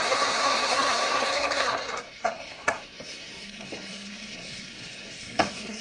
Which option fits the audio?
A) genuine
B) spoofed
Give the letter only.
B